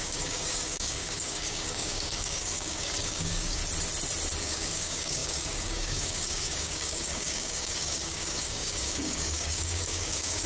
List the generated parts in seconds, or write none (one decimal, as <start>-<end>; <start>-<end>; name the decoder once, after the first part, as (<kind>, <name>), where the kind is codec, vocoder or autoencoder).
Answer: 0.0-3.6 (codec, DAC); 4.4-10.5